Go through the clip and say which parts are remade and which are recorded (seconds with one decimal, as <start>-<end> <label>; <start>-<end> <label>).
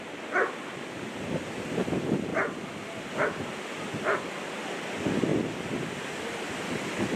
0.0-7.2 recorded